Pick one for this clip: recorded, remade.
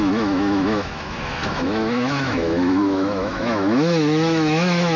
remade